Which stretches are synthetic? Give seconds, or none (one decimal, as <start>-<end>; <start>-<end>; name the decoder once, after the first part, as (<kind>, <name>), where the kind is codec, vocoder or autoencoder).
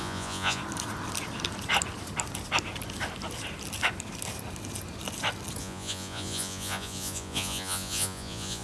0.0-0.6 (vocoder, Vocos); 5.6-8.6